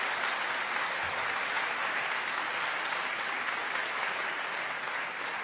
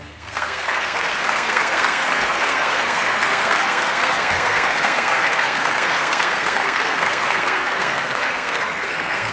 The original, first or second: first